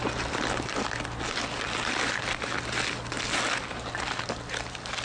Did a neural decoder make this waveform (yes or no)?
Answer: no